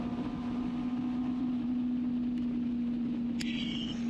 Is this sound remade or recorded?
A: recorded